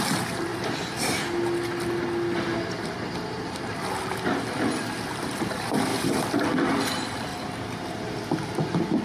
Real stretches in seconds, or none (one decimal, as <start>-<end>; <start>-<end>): 0.0-9.0